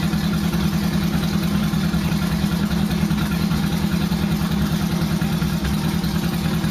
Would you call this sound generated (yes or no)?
no